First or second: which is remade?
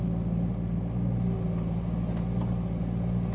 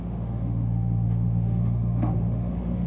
second